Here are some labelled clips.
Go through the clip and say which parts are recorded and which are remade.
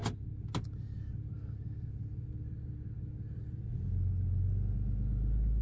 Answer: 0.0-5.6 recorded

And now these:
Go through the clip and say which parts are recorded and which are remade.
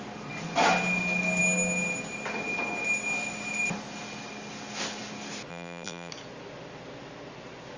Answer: 0.0-5.5 recorded; 5.5-6.1 remade; 6.1-7.8 recorded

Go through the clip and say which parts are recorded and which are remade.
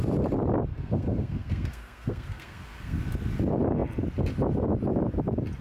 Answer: 0.0-0.7 recorded; 0.7-3.0 remade; 3.0-5.6 recorded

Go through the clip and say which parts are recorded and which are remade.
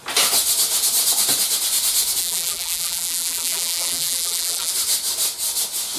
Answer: 0.0-2.2 recorded; 2.2-4.7 remade; 4.7-6.0 recorded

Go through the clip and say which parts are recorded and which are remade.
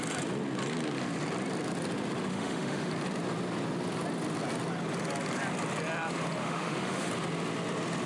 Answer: 0.0-2.3 recorded; 2.3-2.9 remade; 2.9-6.4 recorded; 6.4-7.1 remade; 7.1-8.1 recorded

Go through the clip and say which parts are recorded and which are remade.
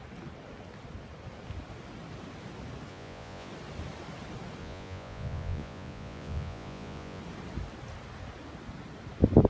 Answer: 0.0-2.9 recorded; 2.9-3.5 remade; 3.5-4.6 recorded; 4.6-7.2 remade; 7.2-9.5 recorded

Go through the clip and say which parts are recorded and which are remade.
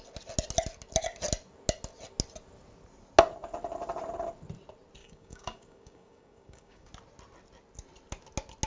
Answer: 0.0-5.0 recorded; 5.0-6.9 remade; 6.9-8.7 recorded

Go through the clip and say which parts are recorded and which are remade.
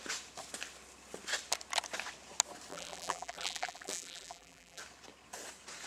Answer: 0.0-2.7 recorded; 2.7-4.8 remade; 4.8-5.9 recorded